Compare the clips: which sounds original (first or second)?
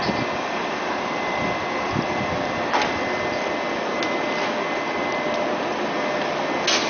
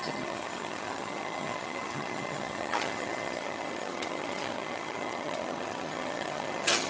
first